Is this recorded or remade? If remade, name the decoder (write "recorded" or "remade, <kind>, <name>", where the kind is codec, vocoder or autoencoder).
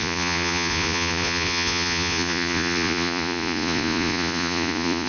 remade, vocoder, Vocos